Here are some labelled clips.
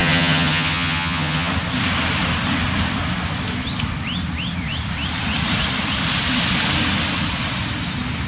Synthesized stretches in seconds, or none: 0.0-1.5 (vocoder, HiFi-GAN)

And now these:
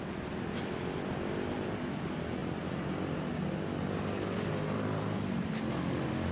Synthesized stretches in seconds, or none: none

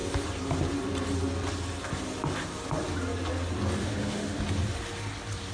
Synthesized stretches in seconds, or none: 3.8-4.4 (autoencoder, DAC-VAE)